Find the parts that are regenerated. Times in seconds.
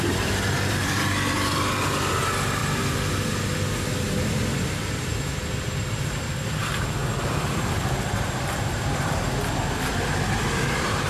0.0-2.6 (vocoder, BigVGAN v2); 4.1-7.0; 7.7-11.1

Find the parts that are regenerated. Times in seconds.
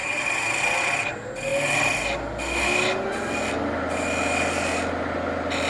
none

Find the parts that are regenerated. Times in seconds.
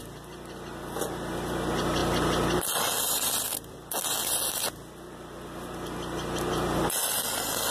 none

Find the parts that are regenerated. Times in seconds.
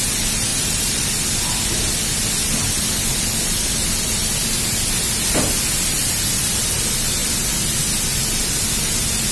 0.5-1.1 (vocoder, BigVGAN v2)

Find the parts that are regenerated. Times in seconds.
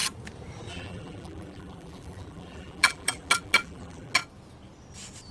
0.7-4.2 (vocoder, BigVGAN v2)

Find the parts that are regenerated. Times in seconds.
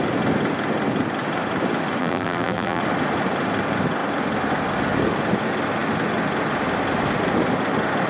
2.0-2.8 (vocoder, BigVGAN v2)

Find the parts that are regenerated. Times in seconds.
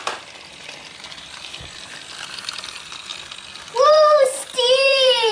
0.0-3.1 (vocoder, BigVGAN v2); 3.9-5.3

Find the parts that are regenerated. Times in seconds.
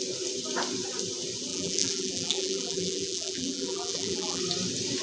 1.5-4.4 (vocoder, BigVGAN v2)